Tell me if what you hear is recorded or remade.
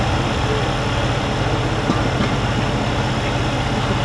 recorded